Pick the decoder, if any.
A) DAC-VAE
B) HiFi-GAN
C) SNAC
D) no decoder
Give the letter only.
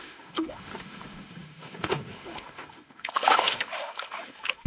A